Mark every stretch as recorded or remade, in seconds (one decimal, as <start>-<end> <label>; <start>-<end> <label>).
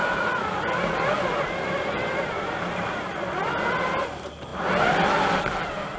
0.0-0.6 remade; 0.6-4.5 recorded; 4.5-5.4 remade; 5.4-6.0 recorded